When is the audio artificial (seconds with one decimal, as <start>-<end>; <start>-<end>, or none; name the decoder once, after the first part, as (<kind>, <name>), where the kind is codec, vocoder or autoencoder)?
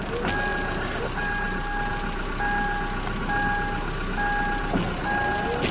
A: none